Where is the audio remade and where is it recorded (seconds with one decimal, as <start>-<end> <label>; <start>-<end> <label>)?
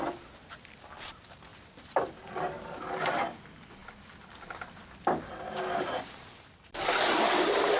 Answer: 0.0-7.8 remade